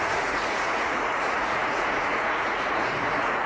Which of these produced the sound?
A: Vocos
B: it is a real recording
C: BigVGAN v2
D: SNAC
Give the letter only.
A